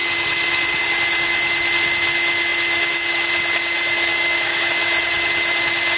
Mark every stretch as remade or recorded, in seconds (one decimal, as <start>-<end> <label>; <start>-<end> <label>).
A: 0.0-4.1 recorded; 4.1-4.7 remade; 4.7-6.0 recorded